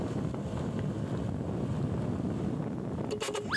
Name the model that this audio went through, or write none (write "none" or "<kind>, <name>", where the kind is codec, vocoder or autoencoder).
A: none